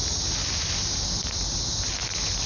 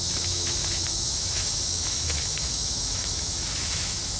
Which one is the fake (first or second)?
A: second